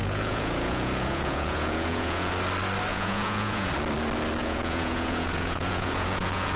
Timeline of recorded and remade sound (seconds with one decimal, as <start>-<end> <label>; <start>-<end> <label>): 0.0-2.3 remade; 2.3-2.9 recorded; 2.9-3.7 remade; 3.7-4.4 recorded; 4.4-6.6 remade